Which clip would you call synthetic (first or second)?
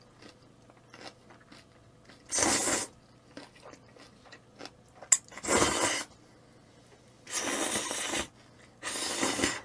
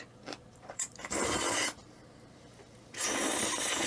second